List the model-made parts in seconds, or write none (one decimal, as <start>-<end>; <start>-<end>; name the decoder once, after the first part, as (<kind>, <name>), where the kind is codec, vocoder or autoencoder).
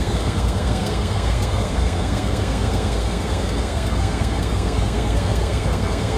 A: 0.0-6.2 (codec, SNAC)